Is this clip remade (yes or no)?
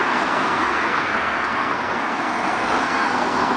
yes